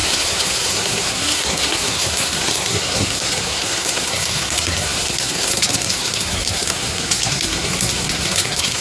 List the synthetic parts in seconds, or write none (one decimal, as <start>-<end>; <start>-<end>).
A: 0.0-8.8

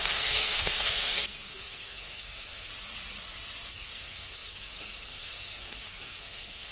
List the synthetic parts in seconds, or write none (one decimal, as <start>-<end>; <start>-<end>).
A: 0.0-2.7; 3.7-6.7

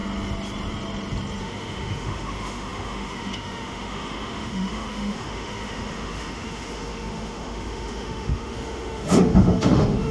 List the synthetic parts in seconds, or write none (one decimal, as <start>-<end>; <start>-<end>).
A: 1.4-10.1